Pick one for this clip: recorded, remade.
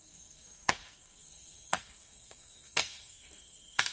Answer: remade